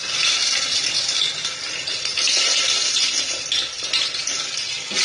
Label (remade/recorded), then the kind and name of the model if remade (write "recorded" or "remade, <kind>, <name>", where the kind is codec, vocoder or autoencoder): recorded